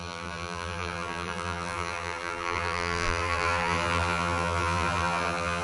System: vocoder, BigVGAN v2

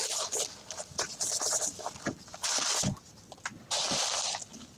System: none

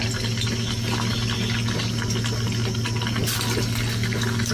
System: none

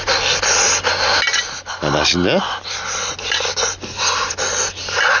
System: none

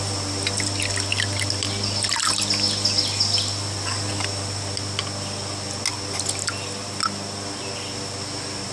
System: none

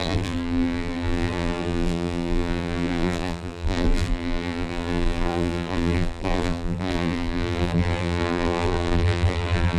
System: vocoder, BigVGAN v2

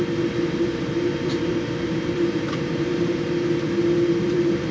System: vocoder, BigVGAN v2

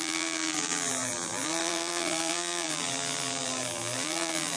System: vocoder, BigVGAN v2